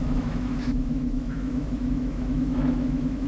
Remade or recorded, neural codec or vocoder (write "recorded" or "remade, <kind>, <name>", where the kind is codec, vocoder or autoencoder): remade, autoencoder, DAC-VAE